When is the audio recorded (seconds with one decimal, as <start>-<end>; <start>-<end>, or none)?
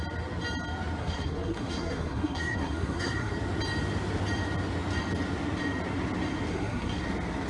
0.0-1.0; 3.3-6.5; 7.0-7.5